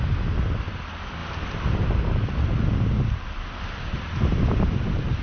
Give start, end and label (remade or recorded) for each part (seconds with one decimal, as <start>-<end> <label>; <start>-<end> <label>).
0.0-5.2 recorded